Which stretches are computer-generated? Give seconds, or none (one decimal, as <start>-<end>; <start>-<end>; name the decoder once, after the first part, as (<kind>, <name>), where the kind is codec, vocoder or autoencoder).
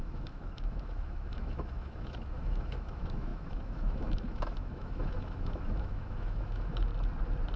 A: 0.0-6.9 (autoencoder, DAC-VAE)